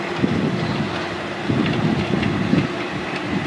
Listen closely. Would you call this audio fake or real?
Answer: real